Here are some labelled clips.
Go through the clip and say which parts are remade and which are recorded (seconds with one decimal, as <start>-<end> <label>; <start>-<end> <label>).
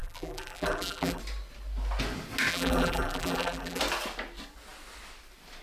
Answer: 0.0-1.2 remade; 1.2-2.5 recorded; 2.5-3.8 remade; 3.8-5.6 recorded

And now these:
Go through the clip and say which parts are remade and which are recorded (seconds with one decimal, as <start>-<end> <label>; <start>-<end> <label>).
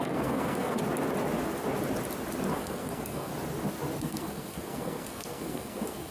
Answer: 0.0-0.8 remade; 0.8-2.5 recorded; 2.5-3.3 remade; 3.3-4.0 recorded; 4.0-6.1 remade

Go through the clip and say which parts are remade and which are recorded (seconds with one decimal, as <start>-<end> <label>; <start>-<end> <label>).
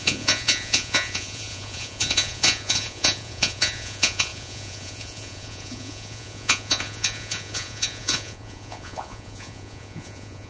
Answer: 0.0-10.5 remade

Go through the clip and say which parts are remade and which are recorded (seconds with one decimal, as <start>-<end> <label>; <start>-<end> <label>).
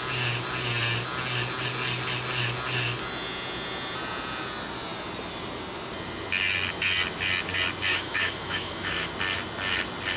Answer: 0.0-7.9 recorded; 7.9-9.1 remade; 9.1-10.2 recorded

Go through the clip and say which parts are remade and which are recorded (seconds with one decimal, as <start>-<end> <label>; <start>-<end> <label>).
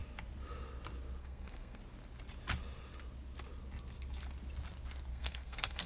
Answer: 0.0-1.2 recorded; 1.2-1.8 remade; 1.8-5.1 recorded; 5.1-5.9 remade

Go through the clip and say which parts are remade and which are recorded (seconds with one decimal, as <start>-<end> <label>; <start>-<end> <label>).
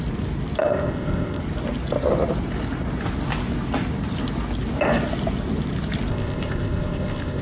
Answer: 0.0-0.6 recorded; 0.6-1.4 remade; 1.4-6.1 recorded; 6.1-7.4 remade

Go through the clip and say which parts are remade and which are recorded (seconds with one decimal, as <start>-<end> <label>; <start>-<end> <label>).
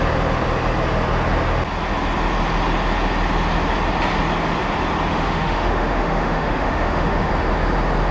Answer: 0.0-5.1 recorded; 5.1-7.3 remade; 7.3-8.1 recorded